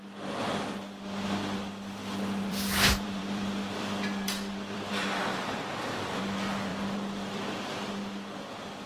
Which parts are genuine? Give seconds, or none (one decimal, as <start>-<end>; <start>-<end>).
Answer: 0.0-2.0; 6.2-6.7; 7.4-8.9